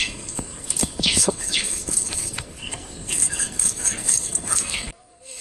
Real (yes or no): no